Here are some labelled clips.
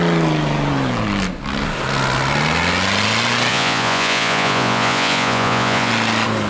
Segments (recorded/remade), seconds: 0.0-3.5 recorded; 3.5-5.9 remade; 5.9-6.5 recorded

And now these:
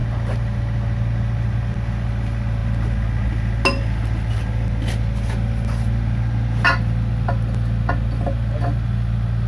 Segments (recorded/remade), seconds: 0.0-9.5 recorded

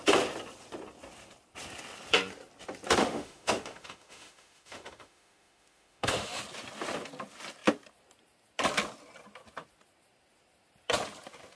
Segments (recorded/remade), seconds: 0.0-3.0 recorded; 3.0-6.4 remade; 6.4-11.6 recorded

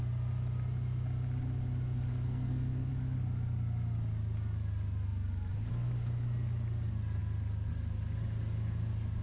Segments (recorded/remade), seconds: 0.0-2.1 recorded; 2.1-2.9 remade; 2.9-9.2 recorded

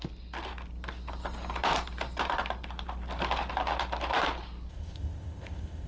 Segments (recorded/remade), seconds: 0.0-4.7 recorded; 4.7-5.9 remade

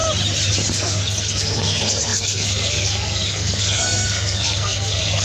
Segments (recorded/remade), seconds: 0.0-0.7 recorded; 0.7-5.2 remade

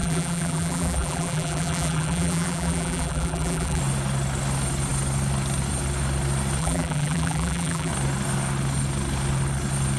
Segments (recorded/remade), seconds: 0.0-3.8 remade; 3.8-6.6 recorded; 6.6-7.9 remade; 7.9-10.0 recorded